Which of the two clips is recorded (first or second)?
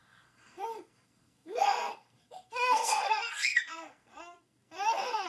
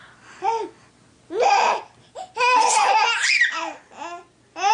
second